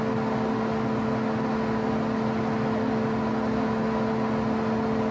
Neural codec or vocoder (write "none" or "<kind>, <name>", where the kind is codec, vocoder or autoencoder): none